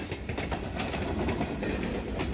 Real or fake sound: real